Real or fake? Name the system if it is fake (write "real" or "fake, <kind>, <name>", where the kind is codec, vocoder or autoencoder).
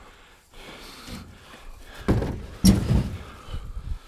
real